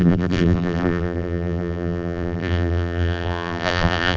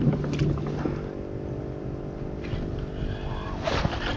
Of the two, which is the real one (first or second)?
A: second